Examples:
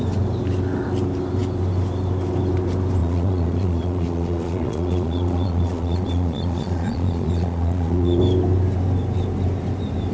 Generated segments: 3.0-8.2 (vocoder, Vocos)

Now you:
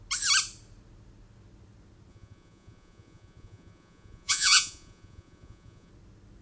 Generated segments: 2.1-5.9 (vocoder, Vocos)

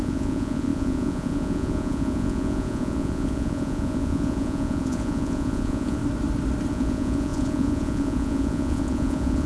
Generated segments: 0.0-6.0 (vocoder, Vocos); 6.7-9.5

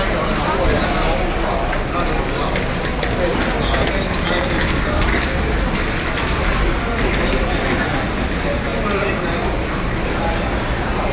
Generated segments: none

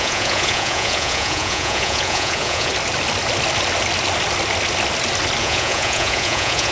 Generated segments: 0.0-2.7 (vocoder, Vocos); 5.4-6.7

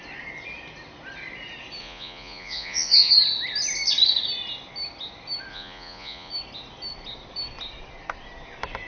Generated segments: 1.8-3.1 (vocoder, Vocos); 5.5-6.3

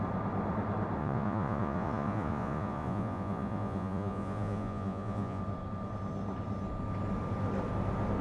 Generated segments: 1.0-5.4 (vocoder, Vocos)

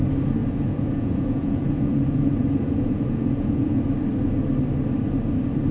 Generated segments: 0.4-3.8 (vocoder, Vocos)